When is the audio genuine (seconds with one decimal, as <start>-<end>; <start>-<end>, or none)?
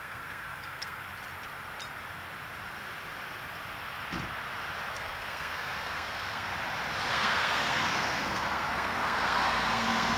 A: 1.0-4.9; 6.5-7.1